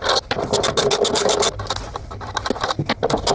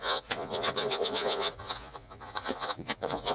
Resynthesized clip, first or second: second